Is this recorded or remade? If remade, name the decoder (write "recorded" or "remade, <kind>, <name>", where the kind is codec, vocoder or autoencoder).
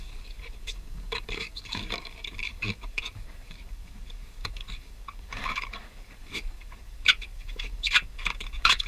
remade, codec, DAC